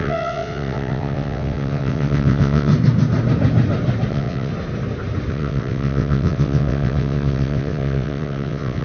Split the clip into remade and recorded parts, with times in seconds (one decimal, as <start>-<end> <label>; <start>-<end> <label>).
0.0-2.7 remade; 2.7-4.1 recorded; 4.1-4.5 remade; 4.5-5.3 recorded; 5.3-8.8 remade